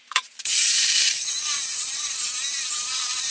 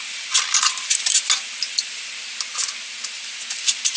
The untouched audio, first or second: second